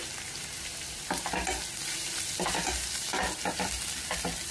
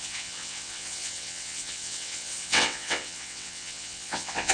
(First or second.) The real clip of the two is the first